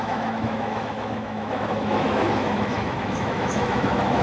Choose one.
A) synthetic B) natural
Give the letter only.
A